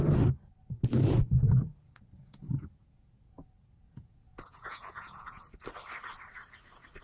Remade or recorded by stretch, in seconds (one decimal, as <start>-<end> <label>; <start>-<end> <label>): 0.0-1.2 recorded; 1.2-5.4 remade; 5.4-7.0 recorded